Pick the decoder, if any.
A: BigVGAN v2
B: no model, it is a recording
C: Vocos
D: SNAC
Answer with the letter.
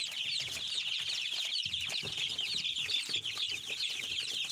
B